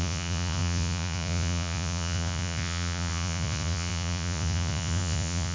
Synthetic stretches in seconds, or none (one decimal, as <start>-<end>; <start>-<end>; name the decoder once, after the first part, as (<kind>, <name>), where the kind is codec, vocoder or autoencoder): 0.0-5.5 (vocoder, Vocos)